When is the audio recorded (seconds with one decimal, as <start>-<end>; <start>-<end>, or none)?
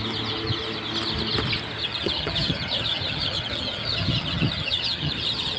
0.0-1.8